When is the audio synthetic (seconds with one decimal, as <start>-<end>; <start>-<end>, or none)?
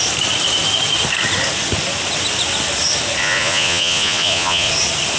3.2-4.7